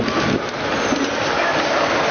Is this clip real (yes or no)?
yes